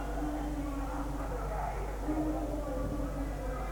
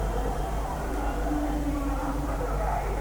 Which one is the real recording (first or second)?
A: first